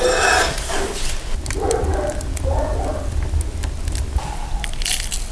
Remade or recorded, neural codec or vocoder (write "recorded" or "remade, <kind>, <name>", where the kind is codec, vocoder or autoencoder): recorded